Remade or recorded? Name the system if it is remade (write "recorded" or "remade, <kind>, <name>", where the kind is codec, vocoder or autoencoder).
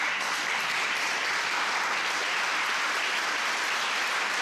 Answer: recorded